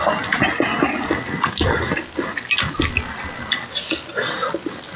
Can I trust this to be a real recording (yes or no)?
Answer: yes